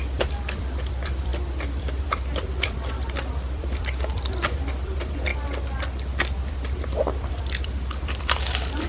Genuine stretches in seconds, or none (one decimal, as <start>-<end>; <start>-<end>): 5.3-6.5